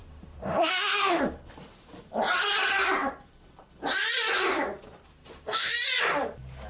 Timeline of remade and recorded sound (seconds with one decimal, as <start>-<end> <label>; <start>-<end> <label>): 0.0-1.2 remade; 1.2-5.1 recorded; 5.1-5.7 remade; 5.7-6.7 recorded